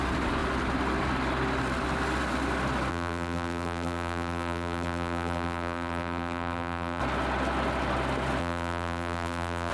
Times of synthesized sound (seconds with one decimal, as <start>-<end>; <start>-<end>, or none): 2.9-7.0; 8.4-9.7

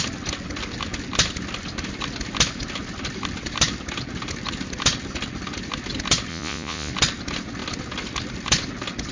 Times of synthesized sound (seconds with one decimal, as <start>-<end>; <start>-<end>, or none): 6.3-6.9

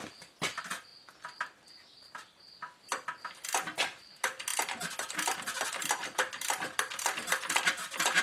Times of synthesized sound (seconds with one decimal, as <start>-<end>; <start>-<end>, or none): none

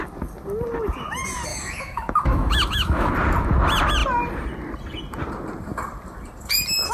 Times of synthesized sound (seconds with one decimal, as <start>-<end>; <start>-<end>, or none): 1.5-3.1

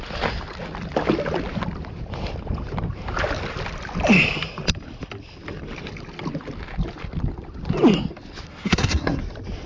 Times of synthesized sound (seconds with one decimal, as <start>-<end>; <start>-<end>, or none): 8.5-9.2

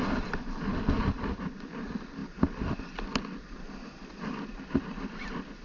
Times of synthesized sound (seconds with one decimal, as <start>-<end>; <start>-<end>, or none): none